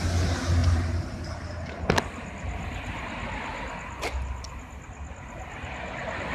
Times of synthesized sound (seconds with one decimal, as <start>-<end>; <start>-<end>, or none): 0.6-2.0